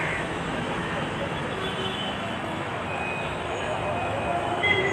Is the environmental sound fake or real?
fake